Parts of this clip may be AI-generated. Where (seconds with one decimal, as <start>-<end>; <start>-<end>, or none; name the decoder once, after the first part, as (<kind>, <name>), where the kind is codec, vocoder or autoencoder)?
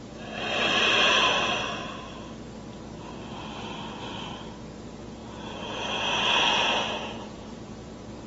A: 5.2-7.9 (vocoder, Vocos)